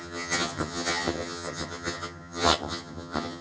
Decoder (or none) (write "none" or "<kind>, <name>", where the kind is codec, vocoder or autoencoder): vocoder, HiFi-GAN